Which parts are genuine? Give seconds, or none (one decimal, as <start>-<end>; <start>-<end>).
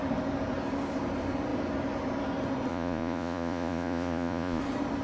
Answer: 0.0-2.7; 4.6-5.0